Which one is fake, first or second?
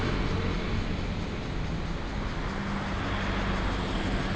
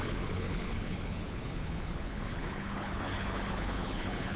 second